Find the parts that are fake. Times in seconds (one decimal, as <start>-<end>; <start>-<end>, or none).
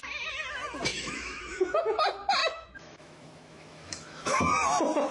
0.9-1.8; 2.4-4.4